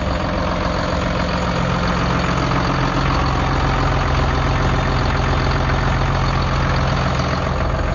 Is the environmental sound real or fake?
real